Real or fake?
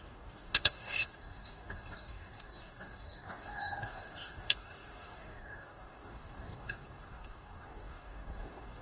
fake